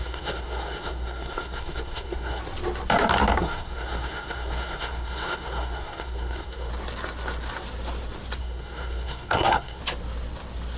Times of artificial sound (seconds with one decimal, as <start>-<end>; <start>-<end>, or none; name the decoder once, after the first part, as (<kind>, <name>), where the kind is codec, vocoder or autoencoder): 0.0-2.4 (codec, SNAC); 3.4-6.7; 8.4-9.8